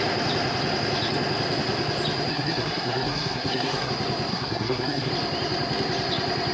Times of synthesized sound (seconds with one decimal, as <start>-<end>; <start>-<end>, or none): 2.3-3.9; 4.3-5.1